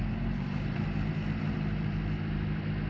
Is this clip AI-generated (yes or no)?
no